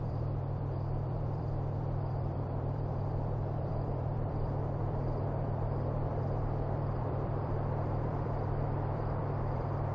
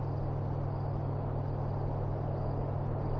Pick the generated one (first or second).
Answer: first